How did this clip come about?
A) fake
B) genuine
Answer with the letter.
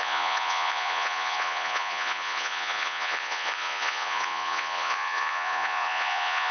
A